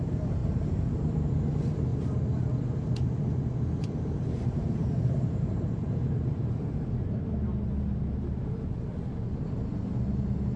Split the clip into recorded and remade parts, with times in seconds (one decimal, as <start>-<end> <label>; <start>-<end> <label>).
0.0-1.9 remade; 1.9-3.8 recorded; 3.8-10.6 remade